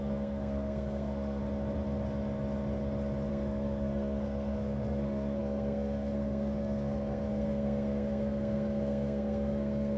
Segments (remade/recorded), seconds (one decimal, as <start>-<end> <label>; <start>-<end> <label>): 0.0-1.4 remade; 1.4-3.3 recorded; 3.3-10.0 remade